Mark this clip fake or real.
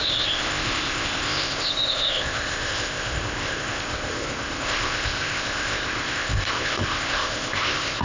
fake